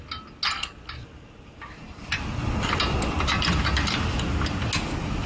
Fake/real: real